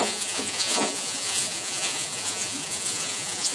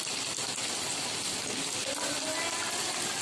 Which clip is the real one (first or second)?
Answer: second